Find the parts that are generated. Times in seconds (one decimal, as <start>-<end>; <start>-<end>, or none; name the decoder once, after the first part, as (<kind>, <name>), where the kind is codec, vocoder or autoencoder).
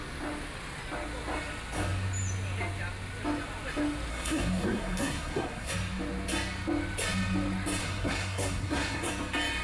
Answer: 4.1-5.7 (codec, SNAC); 7.8-9.1